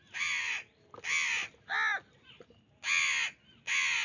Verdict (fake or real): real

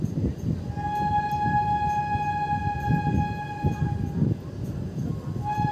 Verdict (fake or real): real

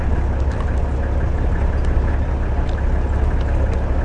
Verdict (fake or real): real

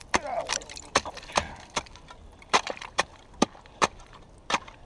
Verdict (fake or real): fake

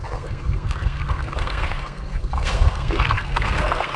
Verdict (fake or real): fake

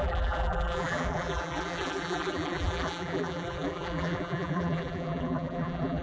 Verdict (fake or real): fake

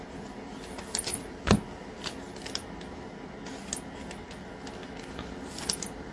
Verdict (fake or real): real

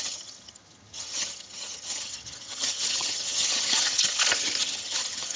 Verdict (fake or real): fake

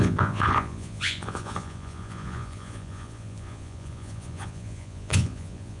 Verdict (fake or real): fake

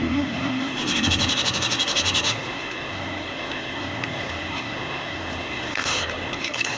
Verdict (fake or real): fake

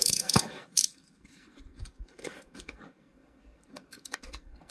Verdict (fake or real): fake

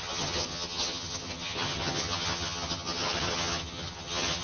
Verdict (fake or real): fake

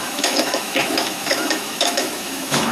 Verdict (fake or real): fake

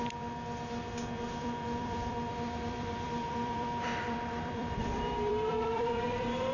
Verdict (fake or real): fake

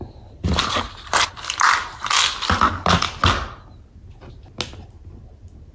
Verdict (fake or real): real